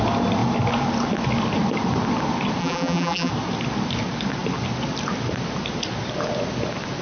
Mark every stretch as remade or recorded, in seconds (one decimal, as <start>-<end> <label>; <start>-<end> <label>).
0.0-2.6 recorded; 2.6-3.3 remade; 3.3-7.0 recorded